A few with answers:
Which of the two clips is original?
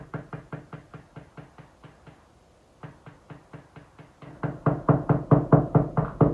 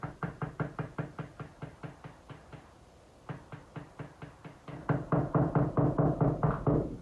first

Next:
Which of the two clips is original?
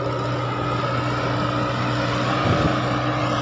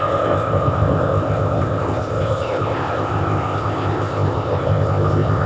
first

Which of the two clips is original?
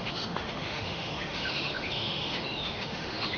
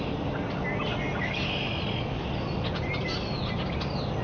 second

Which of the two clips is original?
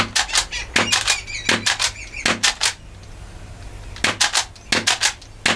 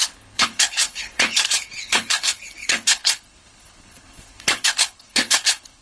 first